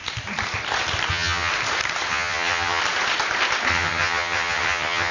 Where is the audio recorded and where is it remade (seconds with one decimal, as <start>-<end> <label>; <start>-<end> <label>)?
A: 0.0-1.1 recorded; 1.1-1.5 remade; 1.5-2.1 recorded; 2.1-2.8 remade; 2.8-3.7 recorded; 3.7-5.1 remade